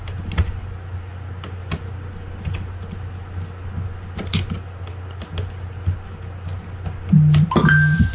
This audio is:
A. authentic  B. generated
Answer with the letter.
A